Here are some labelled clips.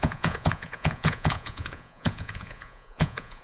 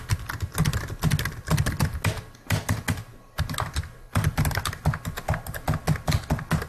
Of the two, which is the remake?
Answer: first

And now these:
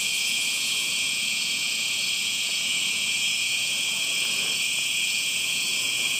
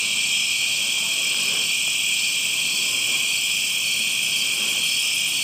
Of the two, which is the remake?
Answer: first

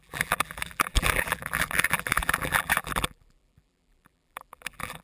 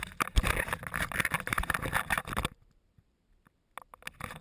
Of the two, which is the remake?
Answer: first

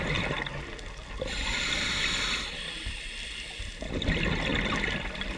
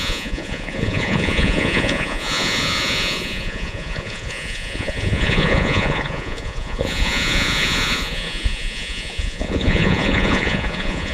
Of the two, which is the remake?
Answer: second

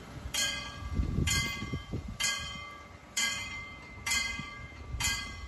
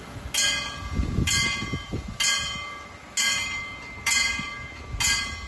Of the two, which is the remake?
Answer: first